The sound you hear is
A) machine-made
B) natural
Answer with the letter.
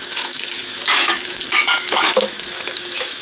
A